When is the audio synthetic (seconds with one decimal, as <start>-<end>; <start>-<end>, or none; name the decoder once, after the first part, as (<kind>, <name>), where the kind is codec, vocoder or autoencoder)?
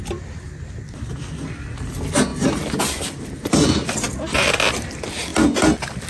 none